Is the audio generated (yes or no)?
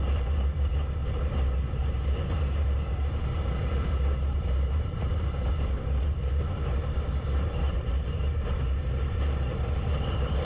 yes